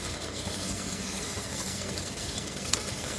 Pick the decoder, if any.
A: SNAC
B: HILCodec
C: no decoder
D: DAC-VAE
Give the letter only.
A